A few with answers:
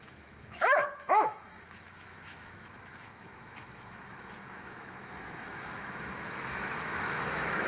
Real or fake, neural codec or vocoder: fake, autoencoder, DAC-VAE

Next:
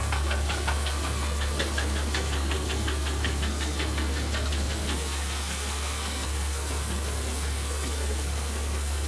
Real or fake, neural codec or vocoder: fake, codec, SNAC